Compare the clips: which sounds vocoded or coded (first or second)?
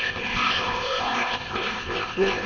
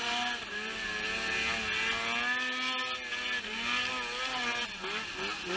first